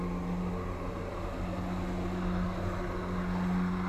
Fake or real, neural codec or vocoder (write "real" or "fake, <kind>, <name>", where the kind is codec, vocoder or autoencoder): real